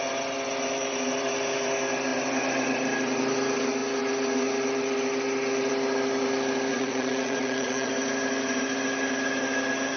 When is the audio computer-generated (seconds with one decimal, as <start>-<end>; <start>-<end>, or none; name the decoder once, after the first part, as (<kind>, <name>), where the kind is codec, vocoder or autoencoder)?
6.7-7.9 (vocoder, Vocos)